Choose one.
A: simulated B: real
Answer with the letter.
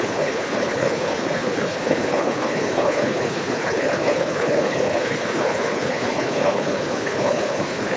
A